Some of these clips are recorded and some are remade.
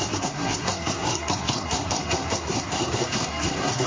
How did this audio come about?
remade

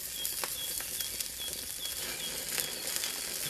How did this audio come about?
recorded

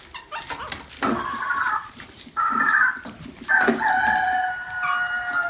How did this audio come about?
recorded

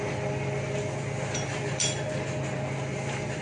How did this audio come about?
recorded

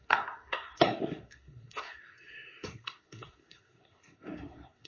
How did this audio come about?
remade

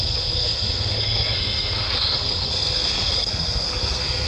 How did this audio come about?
remade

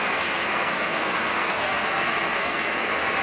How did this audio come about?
remade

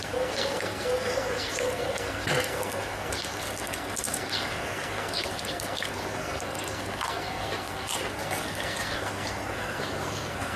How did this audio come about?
remade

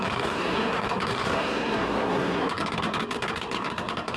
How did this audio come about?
remade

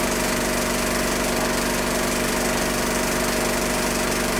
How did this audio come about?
recorded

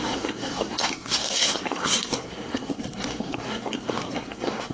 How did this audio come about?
remade